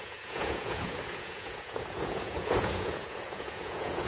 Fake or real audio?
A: fake